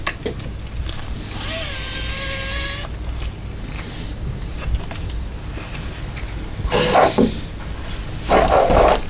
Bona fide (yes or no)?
yes